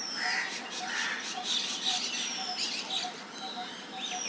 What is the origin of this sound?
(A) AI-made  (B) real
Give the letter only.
B